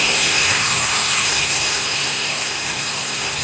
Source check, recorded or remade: remade